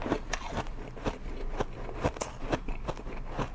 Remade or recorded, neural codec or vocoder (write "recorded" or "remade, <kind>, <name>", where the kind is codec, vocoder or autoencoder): recorded